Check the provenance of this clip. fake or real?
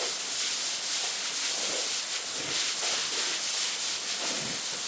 real